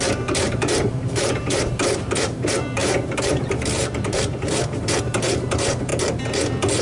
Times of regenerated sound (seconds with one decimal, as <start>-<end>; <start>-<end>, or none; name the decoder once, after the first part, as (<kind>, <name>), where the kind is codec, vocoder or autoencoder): 0.0-5.9 (vocoder, BigVGAN v2)